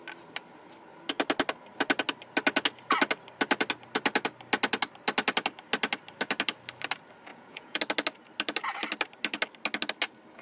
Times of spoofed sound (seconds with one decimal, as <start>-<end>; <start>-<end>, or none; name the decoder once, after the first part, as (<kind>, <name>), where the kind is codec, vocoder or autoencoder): 7.3-7.8 (vocoder, Vocos)